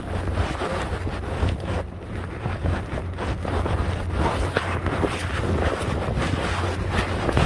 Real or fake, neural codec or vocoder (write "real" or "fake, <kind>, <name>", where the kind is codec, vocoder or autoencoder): real